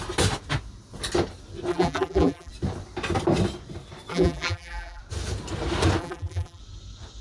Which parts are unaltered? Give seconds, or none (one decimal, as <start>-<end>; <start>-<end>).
0.0-1.7; 2.5-4.1; 5.0-6.0; 6.6-7.2